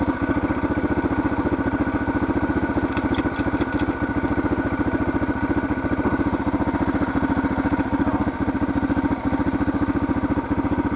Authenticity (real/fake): real